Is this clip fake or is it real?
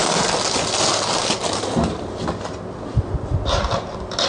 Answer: real